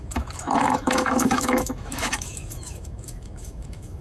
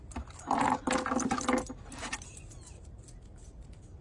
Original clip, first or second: second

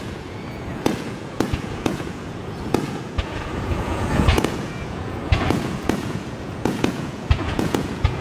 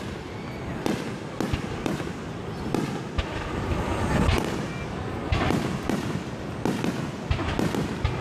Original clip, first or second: second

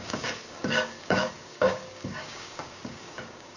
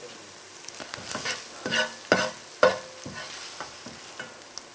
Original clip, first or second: second